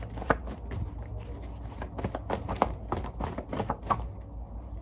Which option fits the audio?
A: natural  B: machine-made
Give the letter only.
A